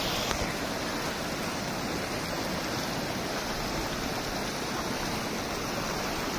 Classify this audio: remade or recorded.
recorded